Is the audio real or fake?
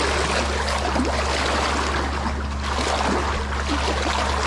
real